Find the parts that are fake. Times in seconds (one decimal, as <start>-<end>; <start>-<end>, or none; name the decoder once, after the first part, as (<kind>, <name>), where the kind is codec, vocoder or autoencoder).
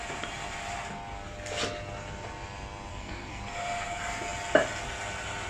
2.9-3.4 (codec, SNAC)